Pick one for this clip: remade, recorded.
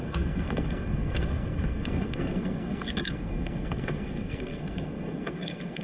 remade